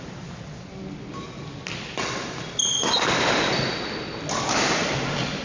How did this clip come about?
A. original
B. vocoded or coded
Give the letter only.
A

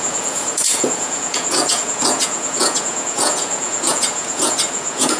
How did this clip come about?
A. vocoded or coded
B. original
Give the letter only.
A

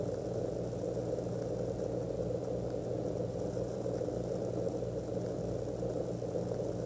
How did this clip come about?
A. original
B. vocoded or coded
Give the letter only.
A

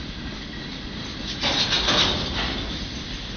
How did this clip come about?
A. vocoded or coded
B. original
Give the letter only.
B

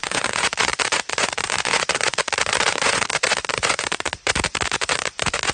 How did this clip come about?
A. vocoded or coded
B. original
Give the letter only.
A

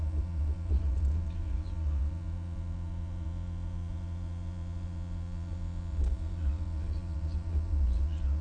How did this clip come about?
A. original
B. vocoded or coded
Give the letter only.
B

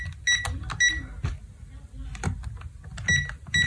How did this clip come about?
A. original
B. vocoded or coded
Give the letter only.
A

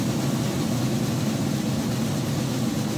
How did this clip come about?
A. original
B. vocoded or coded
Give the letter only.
A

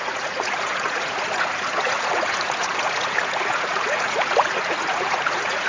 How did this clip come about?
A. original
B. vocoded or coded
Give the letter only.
B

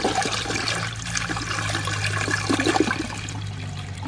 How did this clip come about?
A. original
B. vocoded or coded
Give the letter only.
A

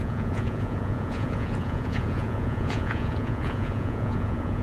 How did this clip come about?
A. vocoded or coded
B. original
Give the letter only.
A